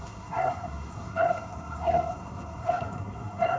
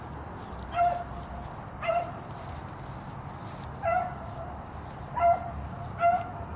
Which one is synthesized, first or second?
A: first